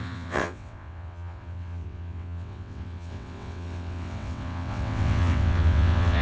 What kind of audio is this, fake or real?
fake